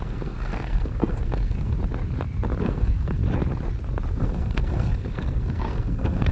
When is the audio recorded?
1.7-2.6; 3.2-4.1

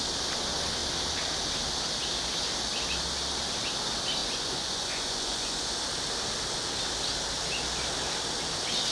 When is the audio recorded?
0.0-4.2; 5.7-8.9

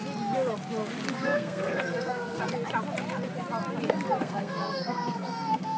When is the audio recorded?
0.0-1.1; 2.4-4.2